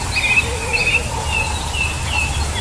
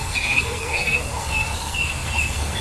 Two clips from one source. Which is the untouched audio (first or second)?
first